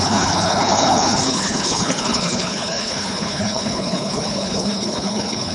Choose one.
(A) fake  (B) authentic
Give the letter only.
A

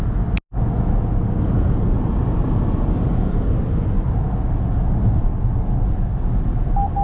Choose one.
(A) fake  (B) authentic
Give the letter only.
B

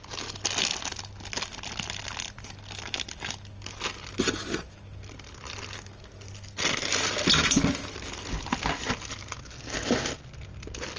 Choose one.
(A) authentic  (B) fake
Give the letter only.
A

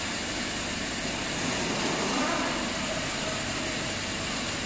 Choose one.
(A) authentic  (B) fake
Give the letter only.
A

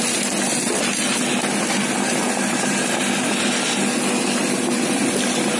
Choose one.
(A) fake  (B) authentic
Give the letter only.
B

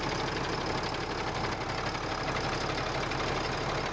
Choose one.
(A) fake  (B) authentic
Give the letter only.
B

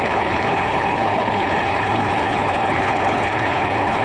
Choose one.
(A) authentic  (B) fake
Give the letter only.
B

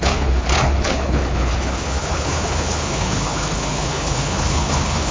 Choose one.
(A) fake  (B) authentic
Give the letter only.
A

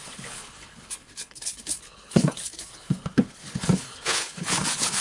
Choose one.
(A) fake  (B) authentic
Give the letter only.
A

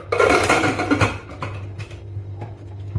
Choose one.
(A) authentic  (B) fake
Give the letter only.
A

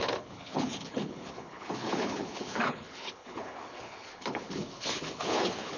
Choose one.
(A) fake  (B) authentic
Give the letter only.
A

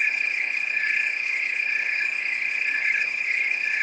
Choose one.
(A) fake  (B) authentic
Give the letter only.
A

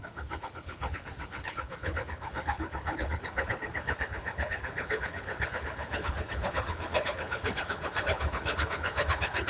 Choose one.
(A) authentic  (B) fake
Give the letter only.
B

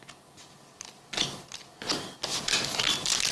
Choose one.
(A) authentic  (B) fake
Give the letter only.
A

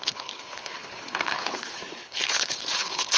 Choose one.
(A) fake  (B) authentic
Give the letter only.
A